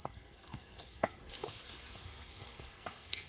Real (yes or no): no